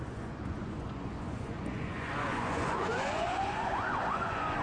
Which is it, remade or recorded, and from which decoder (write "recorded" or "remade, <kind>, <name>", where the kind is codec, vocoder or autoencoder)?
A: remade, vocoder, Vocos